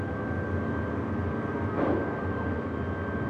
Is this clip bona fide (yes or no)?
yes